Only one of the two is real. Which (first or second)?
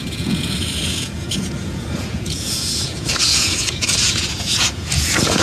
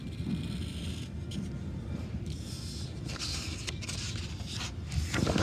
second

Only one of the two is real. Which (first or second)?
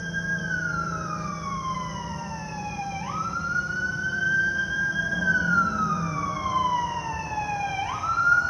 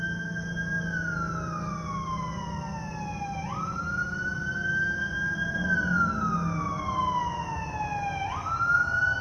second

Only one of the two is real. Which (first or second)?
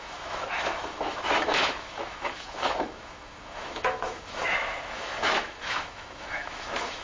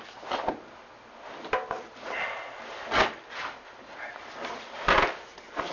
second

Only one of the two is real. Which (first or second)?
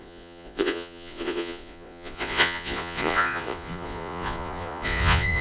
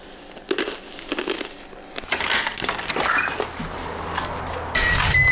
second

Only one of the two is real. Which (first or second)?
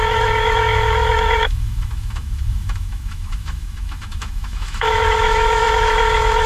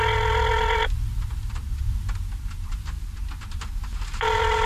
second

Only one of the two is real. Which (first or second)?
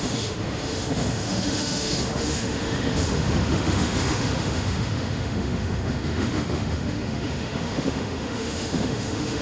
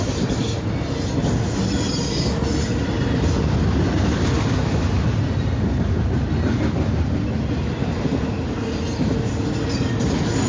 second